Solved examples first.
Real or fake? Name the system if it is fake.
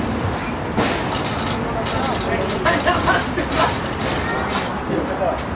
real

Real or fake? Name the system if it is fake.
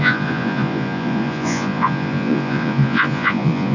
fake, vocoder, Vocos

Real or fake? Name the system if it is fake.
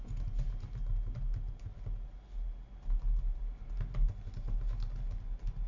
real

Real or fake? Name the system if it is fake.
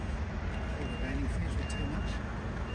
real